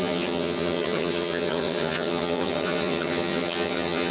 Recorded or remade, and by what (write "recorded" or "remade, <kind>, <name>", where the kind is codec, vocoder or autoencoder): remade, vocoder, HiFi-GAN